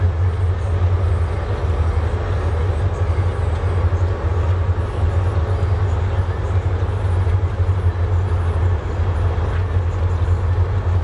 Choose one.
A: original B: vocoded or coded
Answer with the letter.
A